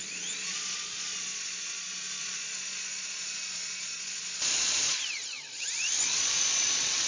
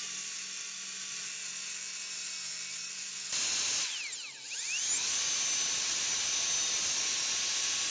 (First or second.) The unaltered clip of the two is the second